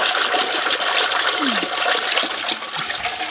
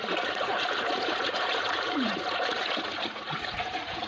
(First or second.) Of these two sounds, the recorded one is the first